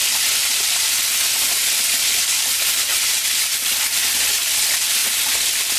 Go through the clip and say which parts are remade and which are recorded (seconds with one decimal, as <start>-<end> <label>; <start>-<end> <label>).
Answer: 0.0-5.8 recorded